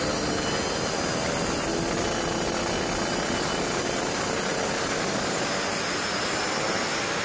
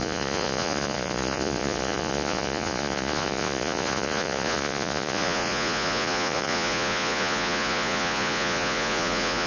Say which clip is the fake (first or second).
second